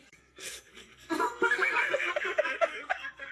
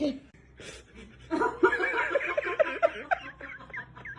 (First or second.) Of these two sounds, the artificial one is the first